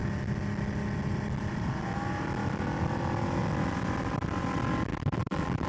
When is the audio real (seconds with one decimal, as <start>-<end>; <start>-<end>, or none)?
0.0-4.9